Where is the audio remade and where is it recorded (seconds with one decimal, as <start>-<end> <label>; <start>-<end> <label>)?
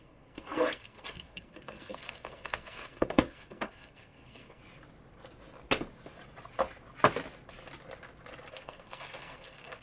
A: 0.0-4.6 remade; 4.6-8.5 recorded; 8.5-9.8 remade